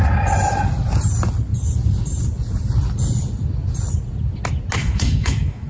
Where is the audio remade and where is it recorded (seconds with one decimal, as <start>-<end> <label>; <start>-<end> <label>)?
0.0-4.8 recorded; 4.8-5.7 remade